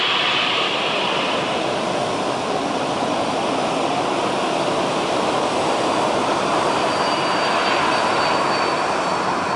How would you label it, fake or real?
real